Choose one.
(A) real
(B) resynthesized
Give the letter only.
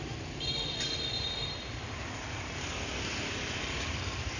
A